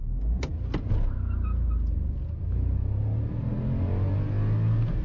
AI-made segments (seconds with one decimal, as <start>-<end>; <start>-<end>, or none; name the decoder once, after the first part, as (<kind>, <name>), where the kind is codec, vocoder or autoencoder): none